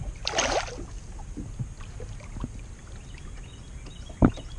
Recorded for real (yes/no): yes